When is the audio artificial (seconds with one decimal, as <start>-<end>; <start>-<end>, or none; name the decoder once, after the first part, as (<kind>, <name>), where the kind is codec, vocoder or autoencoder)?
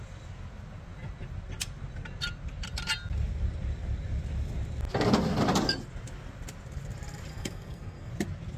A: 7.3-8.1 (codec, SNAC)